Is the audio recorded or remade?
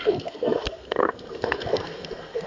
remade